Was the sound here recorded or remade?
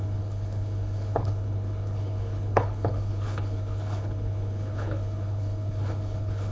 remade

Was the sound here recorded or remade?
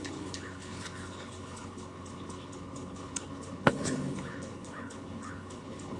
remade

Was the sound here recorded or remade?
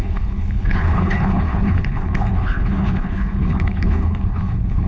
remade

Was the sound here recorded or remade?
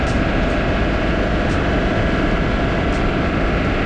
recorded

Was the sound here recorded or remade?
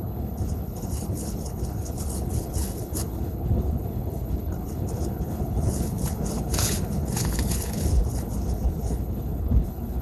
remade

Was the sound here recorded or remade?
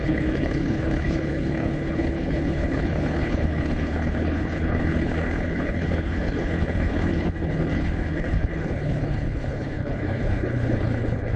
remade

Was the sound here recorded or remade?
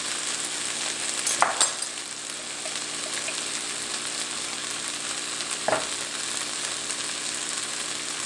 recorded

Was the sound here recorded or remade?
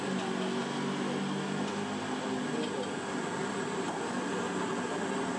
recorded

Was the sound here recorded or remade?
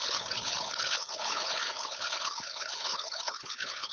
remade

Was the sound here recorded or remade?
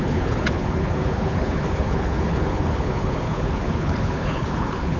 remade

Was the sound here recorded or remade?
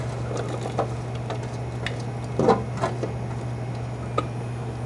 recorded